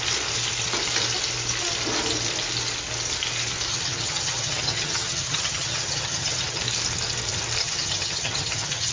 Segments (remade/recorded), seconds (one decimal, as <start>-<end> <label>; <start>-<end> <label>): 0.0-3.7 recorded; 3.7-6.6 remade; 6.6-7.6 recorded; 7.6-8.9 remade